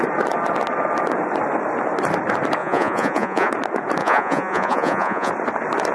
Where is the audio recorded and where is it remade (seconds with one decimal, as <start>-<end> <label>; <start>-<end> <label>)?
0.0-2.6 recorded; 2.6-3.5 remade; 3.5-4.0 recorded; 4.0-5.3 remade; 5.3-5.9 recorded